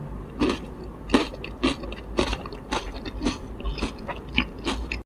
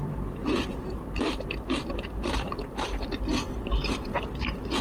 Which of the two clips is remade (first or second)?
second